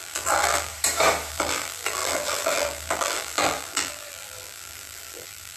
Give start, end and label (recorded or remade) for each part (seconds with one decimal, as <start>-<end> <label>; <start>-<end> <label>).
0.0-0.7 remade; 0.7-1.3 recorded; 1.3-5.6 remade

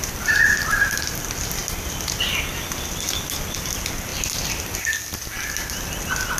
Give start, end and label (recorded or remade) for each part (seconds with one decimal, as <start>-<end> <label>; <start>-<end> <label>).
0.0-6.4 recorded